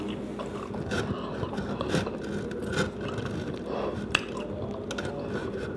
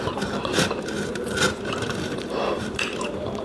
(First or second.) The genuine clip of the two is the first